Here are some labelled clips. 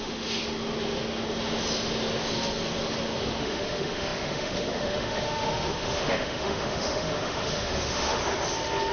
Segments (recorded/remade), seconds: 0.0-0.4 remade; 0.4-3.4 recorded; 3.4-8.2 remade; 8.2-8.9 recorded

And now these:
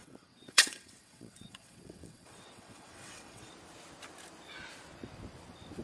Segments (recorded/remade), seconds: 0.0-3.5 remade; 3.5-5.8 recorded